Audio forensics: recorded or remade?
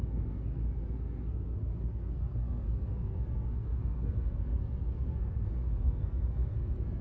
remade